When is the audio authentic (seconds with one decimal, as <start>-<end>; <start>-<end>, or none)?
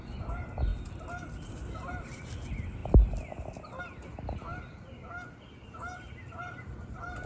0.0-7.3